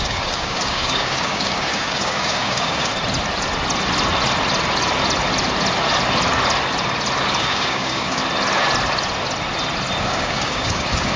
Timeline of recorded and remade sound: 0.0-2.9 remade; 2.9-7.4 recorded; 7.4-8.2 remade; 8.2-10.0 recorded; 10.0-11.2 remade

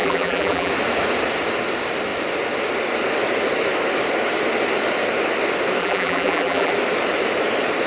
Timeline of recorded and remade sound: 0.0-0.7 remade; 0.7-5.8 recorded; 5.8-6.7 remade; 6.7-7.9 recorded

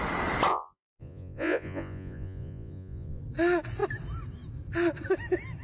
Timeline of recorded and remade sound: 0.0-0.5 recorded; 0.5-3.2 remade; 3.2-5.6 recorded

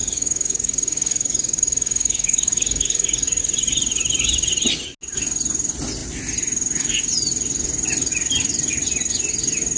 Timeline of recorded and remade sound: 0.0-3.4 remade; 3.4-9.8 recorded

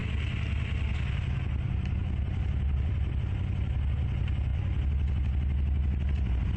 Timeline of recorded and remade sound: 0.0-6.6 recorded

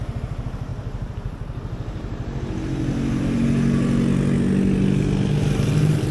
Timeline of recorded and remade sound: 0.0-6.1 recorded